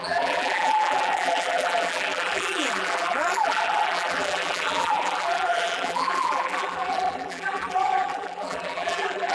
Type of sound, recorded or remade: remade